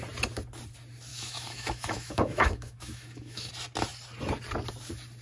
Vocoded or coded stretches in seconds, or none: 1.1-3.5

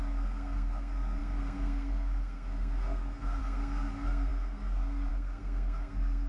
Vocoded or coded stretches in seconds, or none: 0.0-6.3

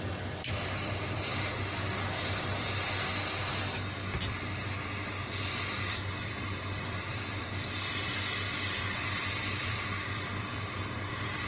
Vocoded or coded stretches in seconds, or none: 0.0-1.3; 5.9-11.5

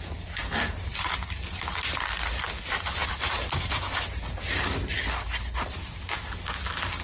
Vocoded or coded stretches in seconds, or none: 0.9-1.5

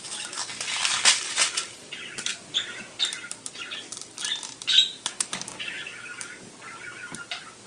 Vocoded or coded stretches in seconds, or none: 4.9-6.5

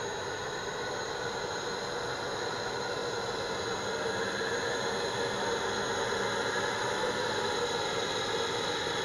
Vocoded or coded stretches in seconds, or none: none

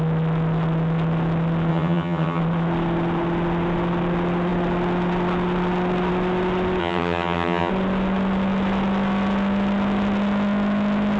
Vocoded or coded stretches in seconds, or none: 1.7-2.4; 6.8-7.7